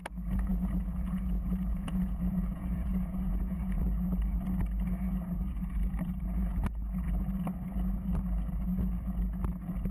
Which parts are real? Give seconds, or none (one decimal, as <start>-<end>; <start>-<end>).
0.0-0.5; 3.8-9.9